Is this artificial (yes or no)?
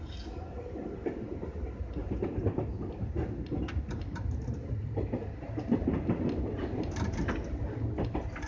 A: no